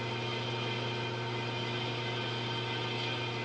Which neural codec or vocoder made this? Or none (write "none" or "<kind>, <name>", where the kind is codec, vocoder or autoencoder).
none